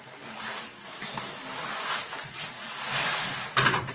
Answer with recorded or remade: remade